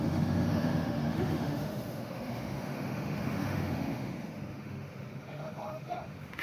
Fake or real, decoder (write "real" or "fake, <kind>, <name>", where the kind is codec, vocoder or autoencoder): fake, autoencoder, DAC-VAE